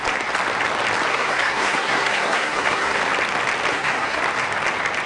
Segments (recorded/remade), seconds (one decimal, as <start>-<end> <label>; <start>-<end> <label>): 0.0-1.1 recorded; 1.1-3.0 remade; 3.0-3.7 recorded; 3.7-4.2 remade; 4.2-5.1 recorded